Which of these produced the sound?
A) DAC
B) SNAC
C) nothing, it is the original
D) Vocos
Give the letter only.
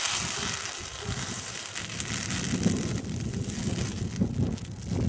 C